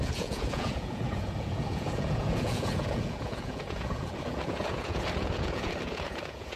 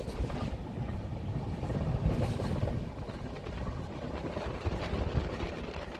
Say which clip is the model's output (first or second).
first